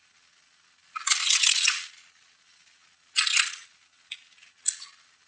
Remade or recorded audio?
remade